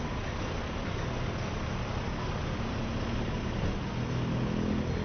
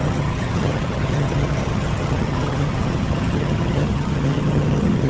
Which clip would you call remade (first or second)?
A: second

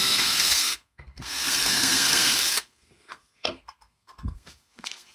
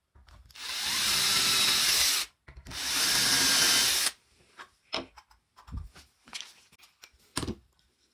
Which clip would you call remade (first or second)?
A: first